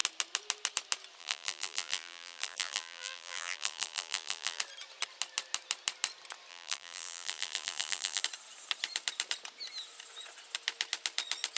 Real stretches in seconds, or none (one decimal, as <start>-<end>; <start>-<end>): 0.0-1.2; 4.6-6.5; 8.2-11.6